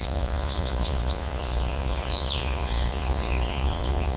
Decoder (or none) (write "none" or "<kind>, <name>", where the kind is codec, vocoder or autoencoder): vocoder, Vocos